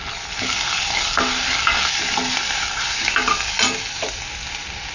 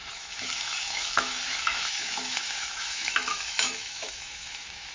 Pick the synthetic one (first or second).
second